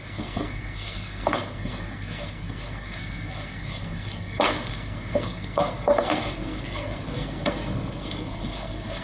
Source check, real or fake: fake